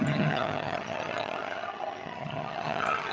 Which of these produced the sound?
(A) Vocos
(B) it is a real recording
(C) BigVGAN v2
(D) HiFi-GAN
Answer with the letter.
D